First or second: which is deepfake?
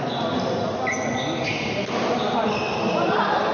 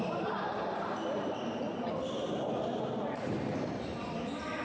second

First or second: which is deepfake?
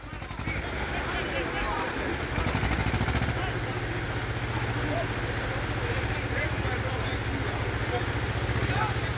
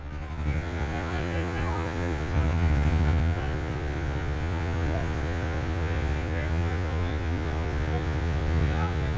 second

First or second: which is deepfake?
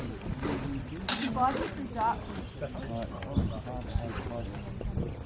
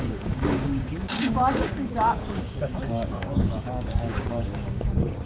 second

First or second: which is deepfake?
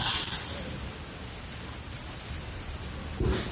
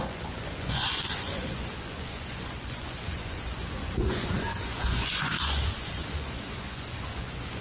second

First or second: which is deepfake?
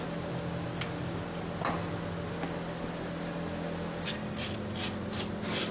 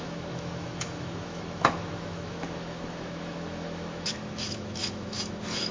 second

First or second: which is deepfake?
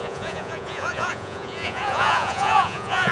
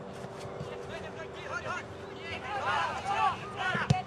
first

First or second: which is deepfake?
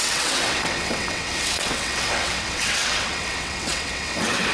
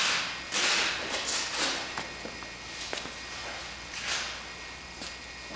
first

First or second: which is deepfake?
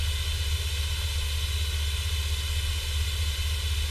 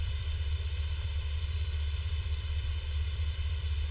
second